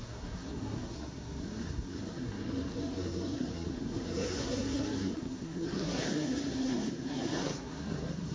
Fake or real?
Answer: fake